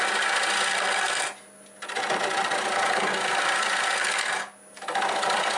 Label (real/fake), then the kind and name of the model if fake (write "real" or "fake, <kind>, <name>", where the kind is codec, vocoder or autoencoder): real